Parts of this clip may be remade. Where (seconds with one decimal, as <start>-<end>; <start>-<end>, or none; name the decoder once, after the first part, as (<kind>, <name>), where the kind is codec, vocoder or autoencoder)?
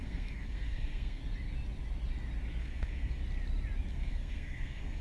0.0-1.2 (codec, SNAC); 2.6-3.2; 3.9-5.0